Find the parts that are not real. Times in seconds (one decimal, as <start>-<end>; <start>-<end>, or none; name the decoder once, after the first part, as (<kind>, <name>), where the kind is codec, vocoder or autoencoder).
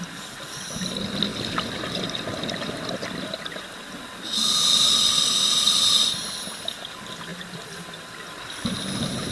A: none